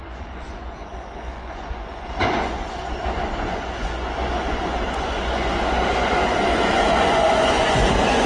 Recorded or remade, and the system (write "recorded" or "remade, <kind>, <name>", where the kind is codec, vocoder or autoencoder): remade, vocoder, Vocos